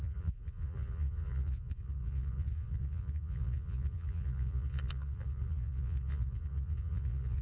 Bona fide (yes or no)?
no